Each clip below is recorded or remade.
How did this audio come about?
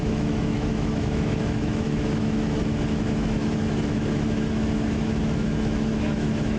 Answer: remade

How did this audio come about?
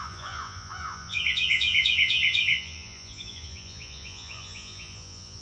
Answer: remade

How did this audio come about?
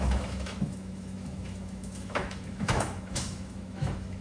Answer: remade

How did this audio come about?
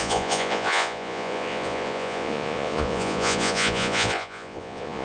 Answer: remade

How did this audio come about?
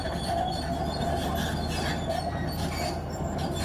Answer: recorded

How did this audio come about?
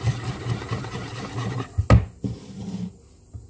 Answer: recorded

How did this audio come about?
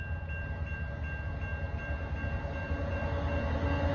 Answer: recorded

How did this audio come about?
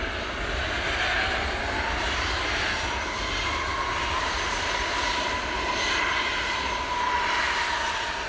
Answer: recorded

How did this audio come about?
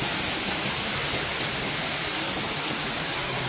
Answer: recorded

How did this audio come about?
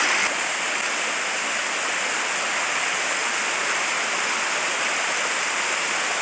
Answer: recorded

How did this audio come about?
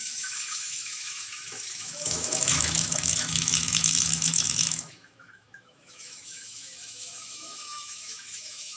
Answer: remade